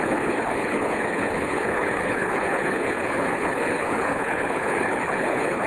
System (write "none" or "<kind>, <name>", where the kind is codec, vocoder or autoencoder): codec, HILCodec